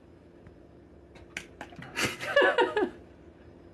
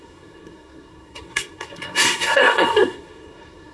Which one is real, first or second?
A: first